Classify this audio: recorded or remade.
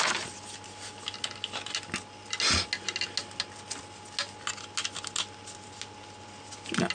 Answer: recorded